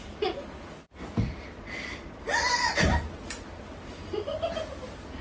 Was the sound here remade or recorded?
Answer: recorded